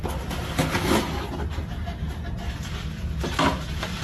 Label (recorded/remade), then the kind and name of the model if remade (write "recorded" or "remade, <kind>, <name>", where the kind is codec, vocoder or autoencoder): recorded